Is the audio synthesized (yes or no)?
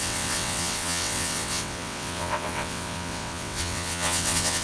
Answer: yes